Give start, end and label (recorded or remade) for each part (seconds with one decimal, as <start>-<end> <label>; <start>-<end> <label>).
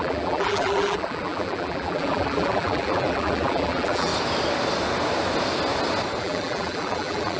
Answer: 0.0-4.1 remade; 4.1-6.2 recorded; 6.2-7.4 remade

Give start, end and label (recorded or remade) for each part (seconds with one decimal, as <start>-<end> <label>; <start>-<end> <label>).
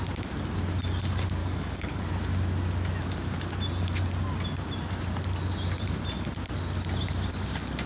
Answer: 0.0-1.4 recorded; 1.4-2.0 remade; 2.0-7.9 recorded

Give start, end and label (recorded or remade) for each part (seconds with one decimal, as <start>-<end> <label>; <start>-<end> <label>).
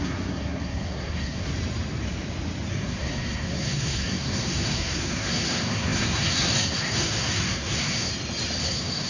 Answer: 0.0-1.5 remade; 1.5-2.7 recorded; 2.7-8.1 remade; 8.1-8.6 recorded; 8.6-9.1 remade